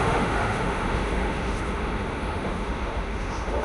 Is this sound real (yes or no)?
no